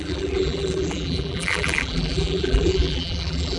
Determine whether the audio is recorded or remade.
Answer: remade